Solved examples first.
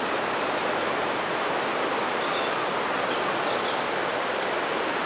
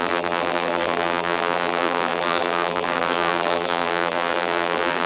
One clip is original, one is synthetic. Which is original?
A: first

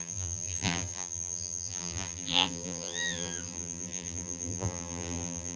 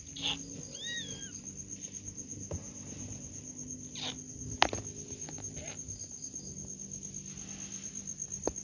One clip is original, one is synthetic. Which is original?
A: second